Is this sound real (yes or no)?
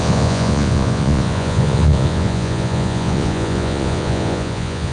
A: no